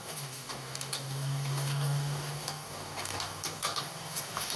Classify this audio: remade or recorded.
remade